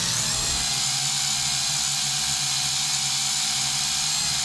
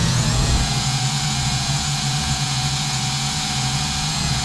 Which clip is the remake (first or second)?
second